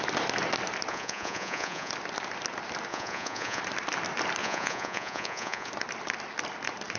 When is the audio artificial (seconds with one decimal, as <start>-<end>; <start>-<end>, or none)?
0.9-1.9; 2.9-3.6; 4.4-5.7